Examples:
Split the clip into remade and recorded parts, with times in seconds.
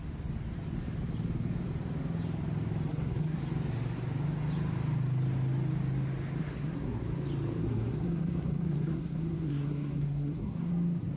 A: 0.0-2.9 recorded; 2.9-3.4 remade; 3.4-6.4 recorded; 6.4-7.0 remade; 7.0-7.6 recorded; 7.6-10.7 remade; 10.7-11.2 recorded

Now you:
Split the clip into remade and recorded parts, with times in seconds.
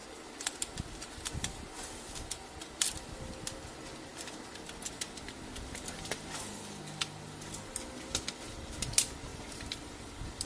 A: 0.0-0.6 remade; 0.6-4.1 recorded; 4.1-4.9 remade; 4.9-10.5 recorded